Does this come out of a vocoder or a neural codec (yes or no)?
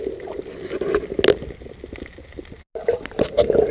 no